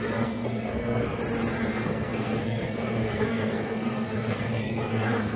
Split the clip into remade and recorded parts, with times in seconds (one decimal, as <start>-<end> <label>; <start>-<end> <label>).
0.0-1.2 remade; 1.2-1.7 recorded; 1.7-5.4 remade